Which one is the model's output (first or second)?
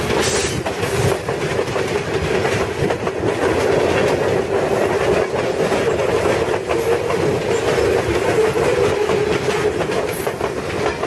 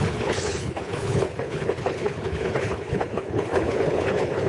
second